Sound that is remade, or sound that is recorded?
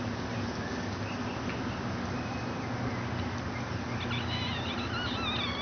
recorded